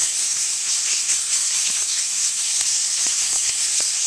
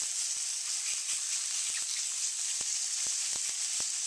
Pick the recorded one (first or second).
second